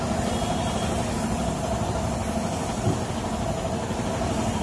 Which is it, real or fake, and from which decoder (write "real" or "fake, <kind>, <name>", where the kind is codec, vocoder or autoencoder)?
real